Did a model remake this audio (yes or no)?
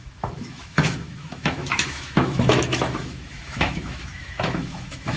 yes